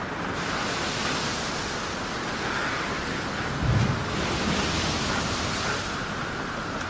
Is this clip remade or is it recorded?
recorded